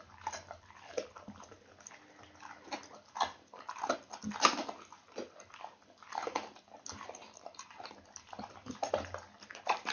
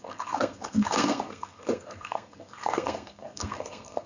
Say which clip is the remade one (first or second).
second